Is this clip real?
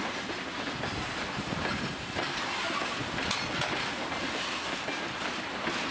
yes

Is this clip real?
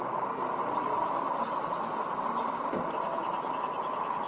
yes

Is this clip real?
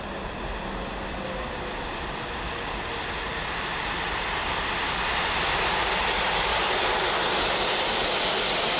yes